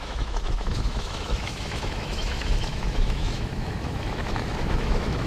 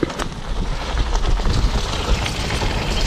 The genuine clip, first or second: second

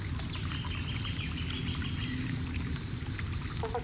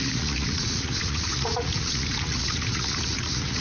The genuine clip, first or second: first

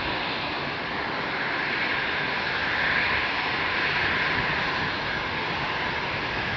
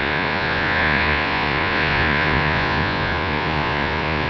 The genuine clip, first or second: first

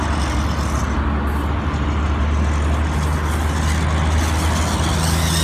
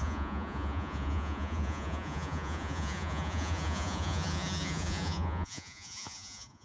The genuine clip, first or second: first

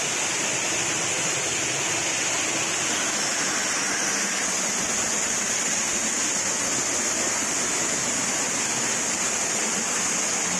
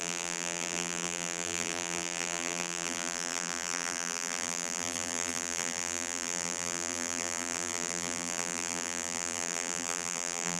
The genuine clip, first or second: first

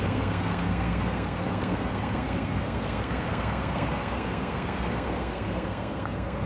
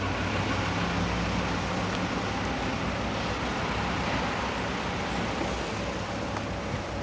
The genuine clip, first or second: second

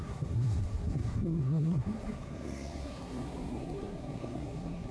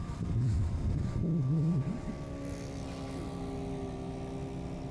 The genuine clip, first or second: second